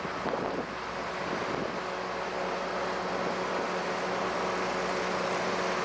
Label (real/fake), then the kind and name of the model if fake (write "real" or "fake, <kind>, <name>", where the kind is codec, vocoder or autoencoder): real